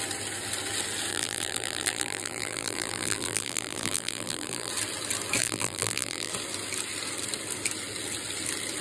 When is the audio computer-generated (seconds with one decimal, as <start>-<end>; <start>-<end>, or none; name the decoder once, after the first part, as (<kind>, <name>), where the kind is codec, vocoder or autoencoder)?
1.1-4.7 (vocoder, BigVGAN v2); 5.4-6.3